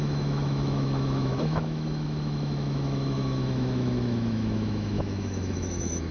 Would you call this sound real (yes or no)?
no